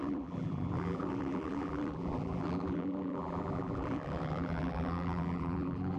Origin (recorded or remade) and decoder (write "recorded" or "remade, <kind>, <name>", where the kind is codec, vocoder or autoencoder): remade, vocoder, BigVGAN v2